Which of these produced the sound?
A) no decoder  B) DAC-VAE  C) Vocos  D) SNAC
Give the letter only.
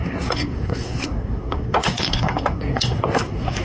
D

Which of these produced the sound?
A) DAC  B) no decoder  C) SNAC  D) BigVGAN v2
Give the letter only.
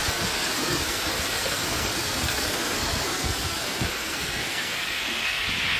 C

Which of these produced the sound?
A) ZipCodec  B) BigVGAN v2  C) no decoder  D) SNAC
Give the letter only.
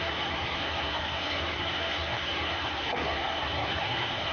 D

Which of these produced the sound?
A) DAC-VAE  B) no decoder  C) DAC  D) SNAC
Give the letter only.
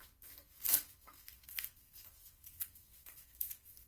D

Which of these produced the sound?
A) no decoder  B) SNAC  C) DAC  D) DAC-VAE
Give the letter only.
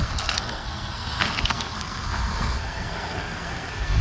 B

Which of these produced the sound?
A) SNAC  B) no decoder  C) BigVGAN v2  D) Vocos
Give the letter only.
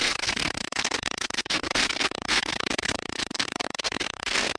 A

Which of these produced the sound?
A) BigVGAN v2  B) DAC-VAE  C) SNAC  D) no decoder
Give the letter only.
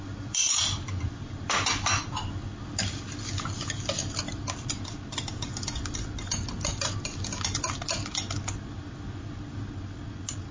D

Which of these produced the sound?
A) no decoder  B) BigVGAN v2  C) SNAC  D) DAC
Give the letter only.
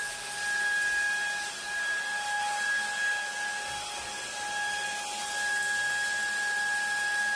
A